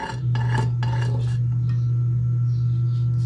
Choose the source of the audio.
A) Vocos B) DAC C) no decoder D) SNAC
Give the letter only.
C